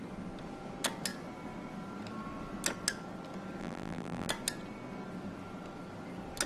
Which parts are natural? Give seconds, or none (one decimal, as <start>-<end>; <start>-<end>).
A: 0.0-3.6; 4.3-6.5